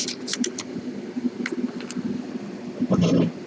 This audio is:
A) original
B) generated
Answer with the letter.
A